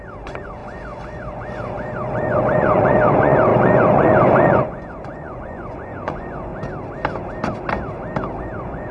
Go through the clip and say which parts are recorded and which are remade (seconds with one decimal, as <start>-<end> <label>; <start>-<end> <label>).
0.0-6.5 remade; 6.5-8.4 recorded; 8.4-8.9 remade